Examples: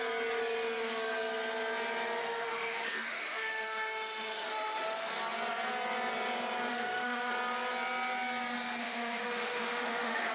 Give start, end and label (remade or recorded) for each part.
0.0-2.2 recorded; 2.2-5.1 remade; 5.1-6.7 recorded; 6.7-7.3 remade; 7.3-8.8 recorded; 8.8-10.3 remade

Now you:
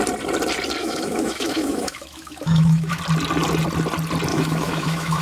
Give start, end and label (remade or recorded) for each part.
0.0-0.8 recorded; 0.8-3.0 remade; 3.0-4.3 recorded; 4.3-5.2 remade

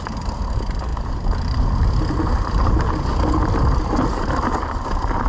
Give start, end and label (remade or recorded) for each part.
0.0-5.3 recorded

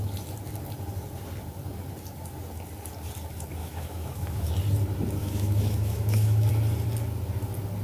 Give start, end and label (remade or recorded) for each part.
0.0-3.6 recorded; 3.6-4.5 remade; 4.5-5.2 recorded; 5.2-6.5 remade; 6.5-7.8 recorded